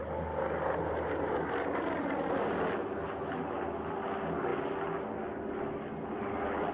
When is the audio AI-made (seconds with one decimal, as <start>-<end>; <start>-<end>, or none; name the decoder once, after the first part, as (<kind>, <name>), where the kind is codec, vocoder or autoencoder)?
none